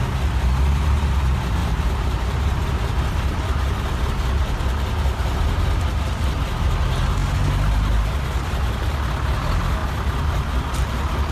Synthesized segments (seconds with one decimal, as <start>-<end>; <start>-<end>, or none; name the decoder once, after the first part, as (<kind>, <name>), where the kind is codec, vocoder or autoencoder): 1.6-2.7 (vocoder, BigVGAN v2); 9.8-11.3